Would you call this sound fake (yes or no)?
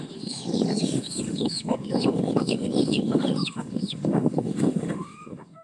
yes